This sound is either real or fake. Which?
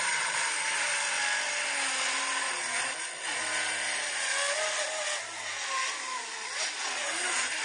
real